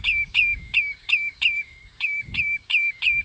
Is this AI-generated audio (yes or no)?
yes